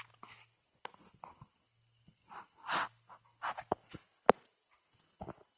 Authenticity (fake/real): real